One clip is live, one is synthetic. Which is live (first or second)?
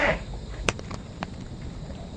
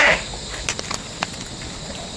second